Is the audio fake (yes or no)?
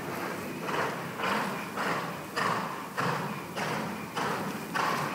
no